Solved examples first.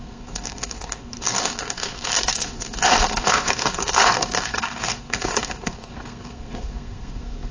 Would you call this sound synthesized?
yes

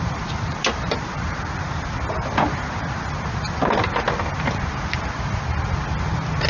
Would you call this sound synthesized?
no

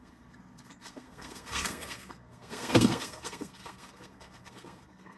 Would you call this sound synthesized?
yes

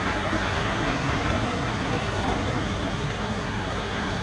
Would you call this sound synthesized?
yes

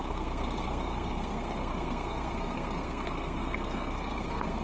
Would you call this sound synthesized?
yes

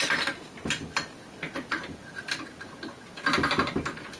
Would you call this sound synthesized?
no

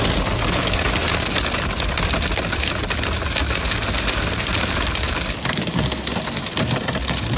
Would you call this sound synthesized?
no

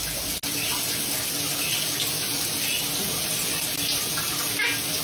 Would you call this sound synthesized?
no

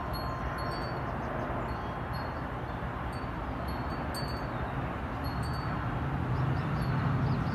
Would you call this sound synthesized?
no